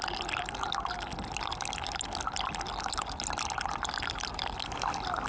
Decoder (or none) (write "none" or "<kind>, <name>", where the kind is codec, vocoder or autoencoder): none